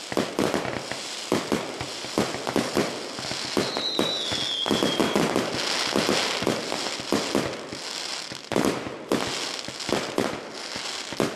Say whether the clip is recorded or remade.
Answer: recorded